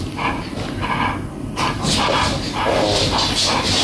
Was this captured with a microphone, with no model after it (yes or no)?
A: yes